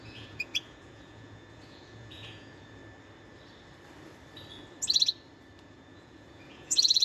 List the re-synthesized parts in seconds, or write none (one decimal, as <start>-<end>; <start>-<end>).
0.0-2.8; 5.6-7.0

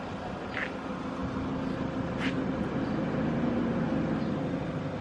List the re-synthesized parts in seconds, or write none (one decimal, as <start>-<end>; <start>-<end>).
none

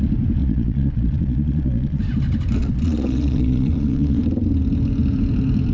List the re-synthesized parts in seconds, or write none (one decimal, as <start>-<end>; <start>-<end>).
0.4-2.0; 2.6-4.2

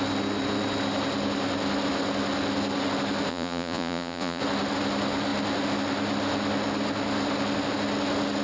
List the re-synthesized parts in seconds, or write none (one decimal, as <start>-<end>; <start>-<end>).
3.3-4.4

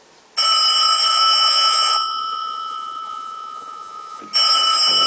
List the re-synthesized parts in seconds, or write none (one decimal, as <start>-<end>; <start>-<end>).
1.1-4.2

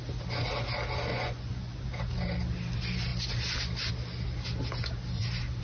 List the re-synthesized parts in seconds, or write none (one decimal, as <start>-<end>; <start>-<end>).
1.1-1.9

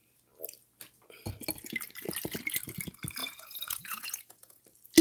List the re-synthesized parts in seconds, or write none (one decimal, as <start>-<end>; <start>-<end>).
3.2-4.6

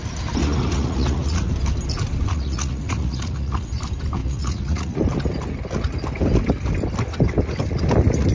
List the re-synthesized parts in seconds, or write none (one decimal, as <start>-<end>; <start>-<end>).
0.4-1.5; 2.3-3.7; 4.2-5.0